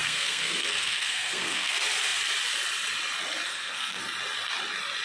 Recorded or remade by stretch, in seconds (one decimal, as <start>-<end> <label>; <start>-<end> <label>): 0.0-1.7 remade; 1.7-3.5 recorded; 3.5-4.0 remade; 4.0-5.0 recorded